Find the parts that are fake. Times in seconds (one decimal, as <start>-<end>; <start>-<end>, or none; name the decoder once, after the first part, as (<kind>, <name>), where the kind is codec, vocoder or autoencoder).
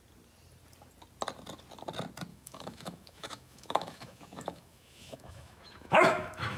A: 2.3-6.6 (autoencoder, DAC-VAE)